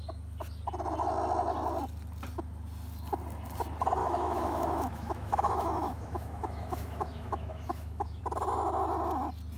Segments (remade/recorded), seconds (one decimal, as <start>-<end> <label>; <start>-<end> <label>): 0.0-4.0 recorded; 4.0-8.2 remade; 8.2-9.6 recorded